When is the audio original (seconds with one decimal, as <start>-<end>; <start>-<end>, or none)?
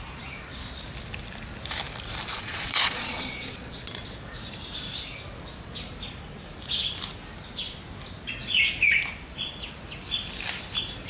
0.0-2.3; 4.0-11.1